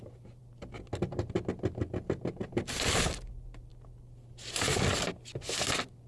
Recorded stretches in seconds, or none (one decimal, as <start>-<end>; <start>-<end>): 0.0-6.1